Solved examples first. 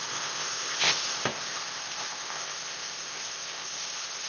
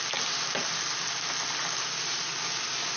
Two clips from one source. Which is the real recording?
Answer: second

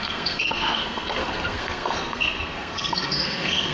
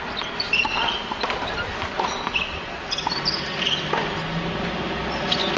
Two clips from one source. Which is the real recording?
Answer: second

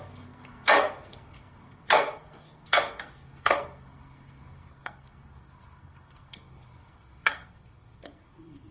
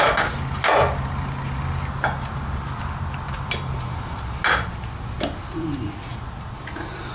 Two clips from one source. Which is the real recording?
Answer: second